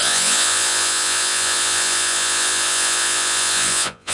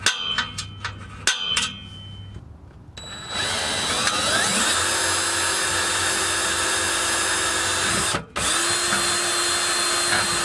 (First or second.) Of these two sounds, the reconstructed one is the first